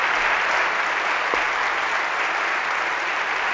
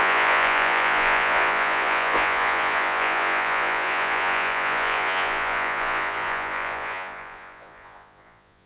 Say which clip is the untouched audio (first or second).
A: first